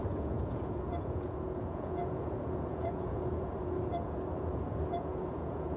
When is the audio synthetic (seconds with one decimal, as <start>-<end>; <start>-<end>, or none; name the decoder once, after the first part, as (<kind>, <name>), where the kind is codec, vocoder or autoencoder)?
0.0-5.8 (vocoder, Vocos)